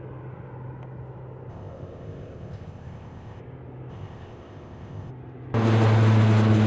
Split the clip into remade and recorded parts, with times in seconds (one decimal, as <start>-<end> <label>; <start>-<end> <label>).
0.0-1.5 recorded; 1.5-3.4 remade; 3.4-3.9 recorded; 3.9-5.1 remade; 5.1-6.7 recorded